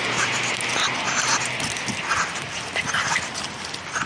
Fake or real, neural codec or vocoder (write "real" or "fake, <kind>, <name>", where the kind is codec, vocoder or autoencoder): real